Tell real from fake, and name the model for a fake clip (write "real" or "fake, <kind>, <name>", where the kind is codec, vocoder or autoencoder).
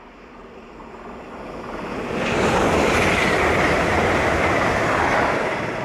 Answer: real